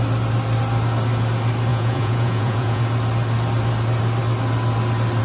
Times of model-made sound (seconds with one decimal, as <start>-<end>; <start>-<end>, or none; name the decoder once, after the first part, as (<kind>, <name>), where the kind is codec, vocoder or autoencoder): 1.7-2.8 (vocoder, Vocos)